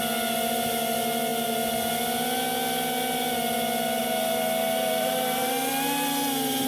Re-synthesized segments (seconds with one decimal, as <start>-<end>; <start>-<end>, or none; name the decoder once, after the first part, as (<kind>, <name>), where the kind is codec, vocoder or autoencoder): 4.0-5.7 (vocoder, BigVGAN v2)